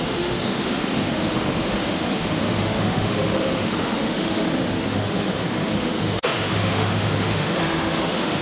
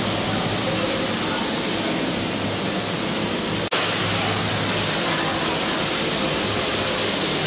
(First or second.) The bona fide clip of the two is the second